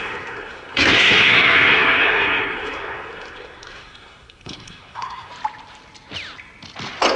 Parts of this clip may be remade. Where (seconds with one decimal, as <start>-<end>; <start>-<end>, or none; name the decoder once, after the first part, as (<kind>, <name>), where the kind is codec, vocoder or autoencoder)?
0.0-5.3 (codec, SNAC)